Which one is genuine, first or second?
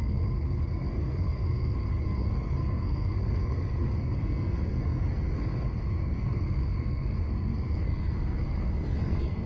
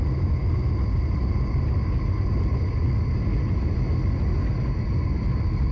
second